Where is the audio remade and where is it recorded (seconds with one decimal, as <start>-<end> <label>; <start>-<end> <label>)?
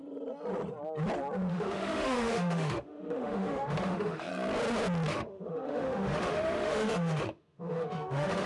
0.0-1.5 recorded; 1.5-4.3 remade; 4.3-5.1 recorded; 5.1-8.5 remade